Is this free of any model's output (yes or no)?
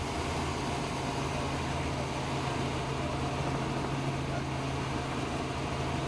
yes